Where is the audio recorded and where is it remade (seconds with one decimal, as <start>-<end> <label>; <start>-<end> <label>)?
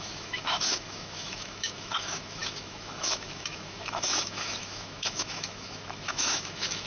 0.0-6.9 remade